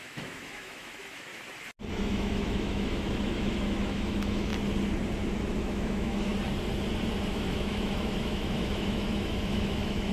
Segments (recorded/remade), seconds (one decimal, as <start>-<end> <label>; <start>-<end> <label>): 0.0-1.3 remade; 1.3-1.9 recorded; 1.9-4.5 remade; 4.5-5.6 recorded; 5.6-6.3 remade; 6.3-7.3 recorded; 7.3-10.1 remade